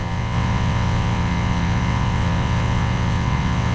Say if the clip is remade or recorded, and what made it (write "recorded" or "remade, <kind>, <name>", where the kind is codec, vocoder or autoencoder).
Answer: remade, vocoder, WaveNeXt